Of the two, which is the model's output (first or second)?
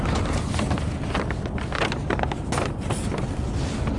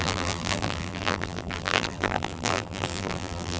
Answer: second